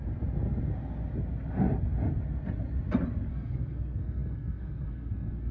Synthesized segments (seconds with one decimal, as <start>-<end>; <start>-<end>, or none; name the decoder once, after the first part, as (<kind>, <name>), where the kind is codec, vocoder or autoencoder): 3.3-5.5 (codec, SNAC)